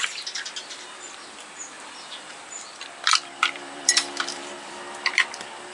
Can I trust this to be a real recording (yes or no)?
no